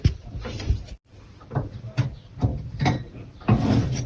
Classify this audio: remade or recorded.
recorded